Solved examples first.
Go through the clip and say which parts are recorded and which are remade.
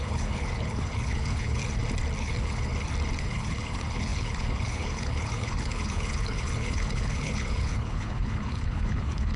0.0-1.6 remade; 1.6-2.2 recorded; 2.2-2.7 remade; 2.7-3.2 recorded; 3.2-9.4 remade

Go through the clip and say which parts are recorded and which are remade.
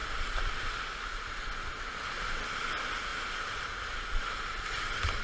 0.0-5.2 recorded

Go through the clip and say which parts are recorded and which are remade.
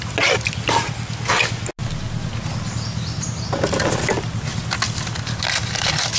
0.0-6.2 recorded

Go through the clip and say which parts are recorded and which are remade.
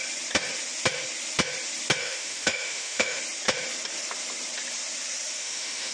0.0-2.0 recorded; 2.0-3.2 remade; 3.2-5.4 recorded; 5.4-5.9 remade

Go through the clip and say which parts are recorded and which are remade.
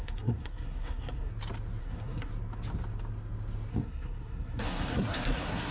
0.0-1.3 remade; 1.3-1.8 recorded; 1.8-2.3 remade; 2.3-3.7 recorded; 3.7-5.7 remade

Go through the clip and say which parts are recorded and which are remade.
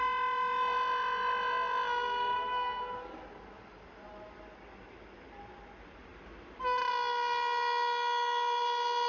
0.0-9.1 recorded